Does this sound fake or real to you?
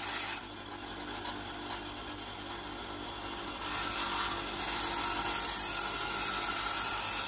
real